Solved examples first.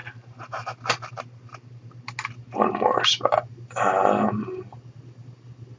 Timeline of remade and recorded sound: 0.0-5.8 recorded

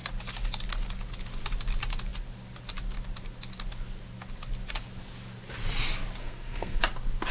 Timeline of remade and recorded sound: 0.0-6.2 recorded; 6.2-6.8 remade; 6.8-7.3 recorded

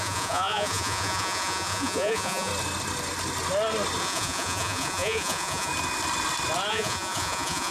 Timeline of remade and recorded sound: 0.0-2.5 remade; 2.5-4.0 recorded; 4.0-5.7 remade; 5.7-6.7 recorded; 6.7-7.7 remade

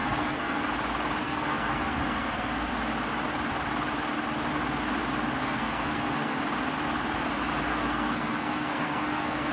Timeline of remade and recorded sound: 0.0-0.6 remade; 0.6-1.2 recorded; 1.2-2.7 remade; 2.7-5.4 recorded; 5.4-6.4 remade; 6.4-7.7 recorded; 7.7-9.5 remade

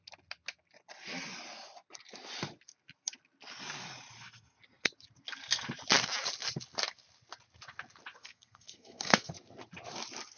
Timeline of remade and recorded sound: 0.0-8.2 recorded; 8.2-9.3 remade; 9.3-10.4 recorded

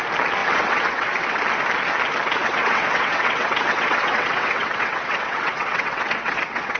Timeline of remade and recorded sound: 0.0-0.4 recorded; 0.4-1.4 remade; 1.4-2.4 recorded; 2.4-6.8 remade